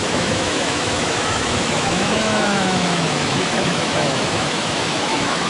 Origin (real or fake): fake